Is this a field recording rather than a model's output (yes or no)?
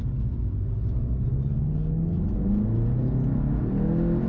yes